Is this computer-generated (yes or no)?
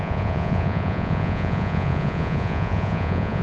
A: yes